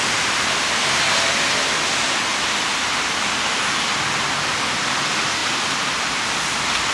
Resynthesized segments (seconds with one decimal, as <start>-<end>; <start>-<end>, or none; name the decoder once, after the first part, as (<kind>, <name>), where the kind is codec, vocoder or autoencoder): 5.4-6.0 (vocoder, BigVGAN v2)